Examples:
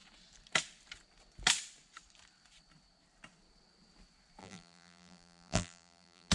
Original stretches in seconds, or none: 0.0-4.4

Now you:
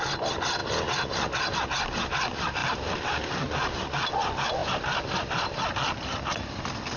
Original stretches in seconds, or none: 0.0-2.6; 3.7-4.6; 5.7-7.0

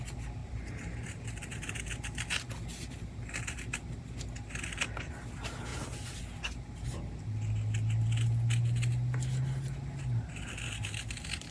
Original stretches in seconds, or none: 0.0-0.4; 1.6-5.7; 6.2-11.5

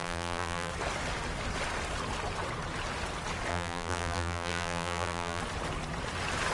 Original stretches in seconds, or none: 0.7-3.5; 5.4-6.5

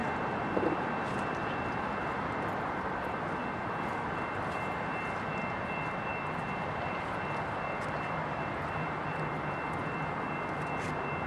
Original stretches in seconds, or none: 4.4-6.1; 10.9-11.3